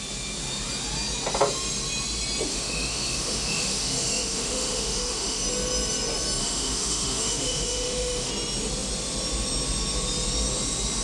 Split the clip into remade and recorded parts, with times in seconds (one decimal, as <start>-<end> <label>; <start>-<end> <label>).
0.0-2.5 recorded; 2.5-5.4 remade; 5.4-6.4 recorded; 6.4-8.3 remade; 8.3-11.0 recorded